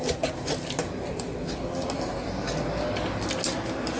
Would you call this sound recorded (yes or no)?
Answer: yes